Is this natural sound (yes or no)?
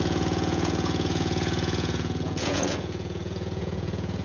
no